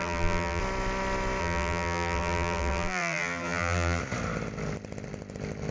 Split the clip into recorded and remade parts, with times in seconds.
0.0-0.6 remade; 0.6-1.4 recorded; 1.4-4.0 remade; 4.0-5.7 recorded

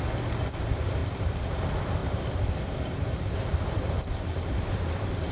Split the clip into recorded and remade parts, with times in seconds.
0.0-1.0 recorded; 1.0-1.5 remade; 1.5-2.0 recorded; 2.0-5.3 remade